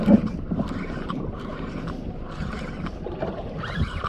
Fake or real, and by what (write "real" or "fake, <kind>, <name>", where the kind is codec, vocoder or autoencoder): fake, vocoder, BigVGAN v2